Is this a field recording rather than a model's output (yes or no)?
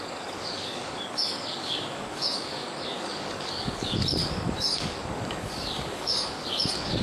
no